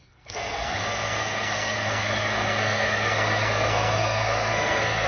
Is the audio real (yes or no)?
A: no